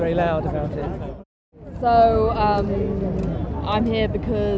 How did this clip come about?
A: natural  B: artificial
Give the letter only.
A